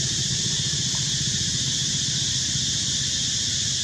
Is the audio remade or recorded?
recorded